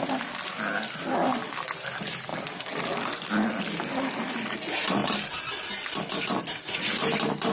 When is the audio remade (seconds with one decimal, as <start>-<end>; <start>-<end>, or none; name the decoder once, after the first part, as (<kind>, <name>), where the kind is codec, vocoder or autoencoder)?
none